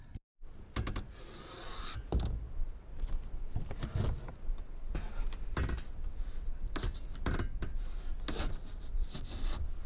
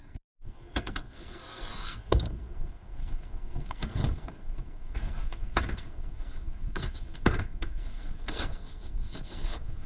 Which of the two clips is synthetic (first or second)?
second